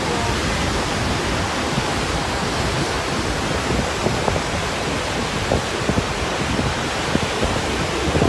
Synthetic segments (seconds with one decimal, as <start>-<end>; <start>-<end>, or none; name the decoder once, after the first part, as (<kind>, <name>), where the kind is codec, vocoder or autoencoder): none